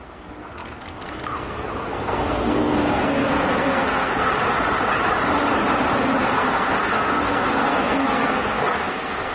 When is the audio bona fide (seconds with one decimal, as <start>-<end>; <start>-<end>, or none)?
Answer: 4.3-6.2